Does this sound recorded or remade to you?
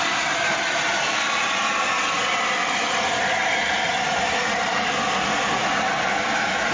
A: recorded